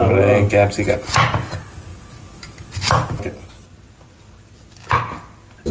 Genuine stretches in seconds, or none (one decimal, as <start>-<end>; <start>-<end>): 0.0-5.7